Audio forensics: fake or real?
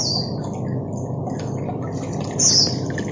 real